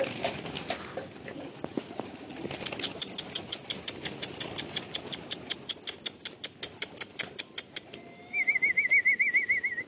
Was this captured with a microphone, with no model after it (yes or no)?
yes